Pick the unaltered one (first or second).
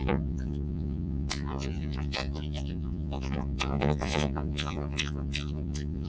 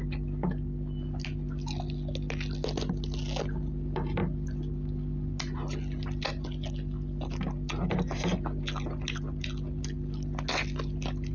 second